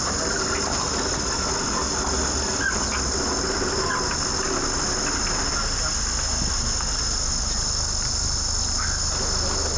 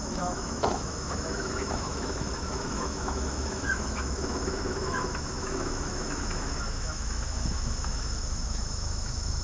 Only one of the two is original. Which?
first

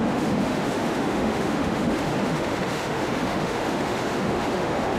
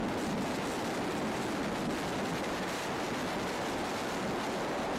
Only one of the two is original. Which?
second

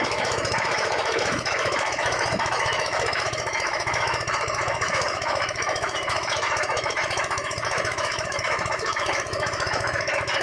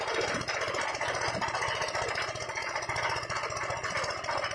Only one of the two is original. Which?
second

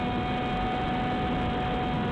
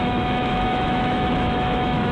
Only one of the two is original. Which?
first